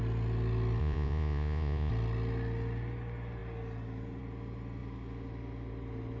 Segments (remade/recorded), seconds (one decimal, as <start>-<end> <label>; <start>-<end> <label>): 0.0-0.8 recorded; 0.8-1.9 remade; 1.9-6.2 recorded